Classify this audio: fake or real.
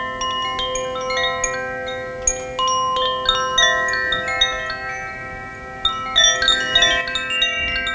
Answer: real